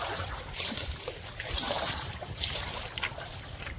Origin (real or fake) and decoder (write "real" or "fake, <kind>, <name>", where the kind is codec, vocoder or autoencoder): fake, vocoder, BigVGAN v2